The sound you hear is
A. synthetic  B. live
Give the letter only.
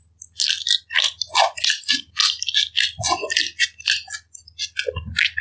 B